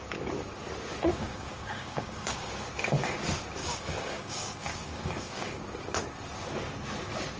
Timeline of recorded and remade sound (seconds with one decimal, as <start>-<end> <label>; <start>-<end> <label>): 0.0-1.1 recorded; 1.1-2.5 remade; 2.5-3.6 recorded; 3.6-5.6 remade; 5.6-7.4 recorded